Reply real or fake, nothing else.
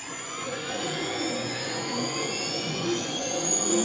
fake